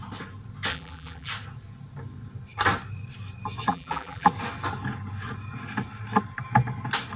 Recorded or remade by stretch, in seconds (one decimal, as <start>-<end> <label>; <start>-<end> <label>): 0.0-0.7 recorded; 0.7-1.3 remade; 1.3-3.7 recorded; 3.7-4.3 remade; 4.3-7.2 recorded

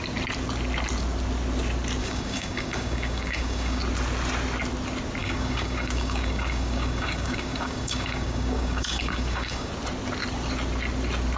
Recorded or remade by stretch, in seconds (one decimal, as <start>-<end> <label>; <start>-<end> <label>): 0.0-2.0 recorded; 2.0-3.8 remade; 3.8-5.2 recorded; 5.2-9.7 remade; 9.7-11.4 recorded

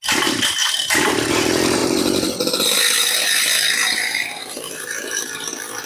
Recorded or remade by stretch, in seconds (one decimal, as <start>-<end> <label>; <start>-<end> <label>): 0.0-5.9 remade

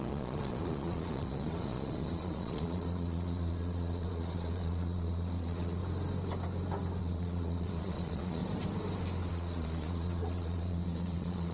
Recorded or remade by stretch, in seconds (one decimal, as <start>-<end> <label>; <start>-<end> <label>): 0.0-5.8 remade; 5.8-7.0 recorded; 7.0-8.4 remade; 8.4-9.3 recorded; 9.3-11.5 remade

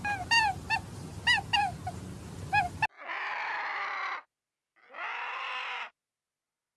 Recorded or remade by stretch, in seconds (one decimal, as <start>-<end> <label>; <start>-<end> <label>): 0.0-6.8 recorded

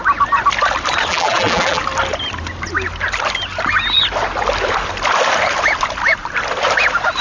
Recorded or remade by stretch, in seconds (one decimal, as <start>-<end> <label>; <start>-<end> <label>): 0.0-1.1 recorded; 1.1-1.8 remade; 1.8-7.2 recorded